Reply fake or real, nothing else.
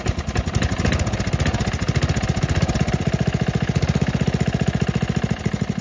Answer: real